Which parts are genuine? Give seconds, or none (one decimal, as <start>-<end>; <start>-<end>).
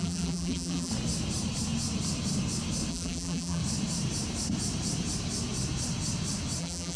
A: 0.9-2.9; 3.6-6.6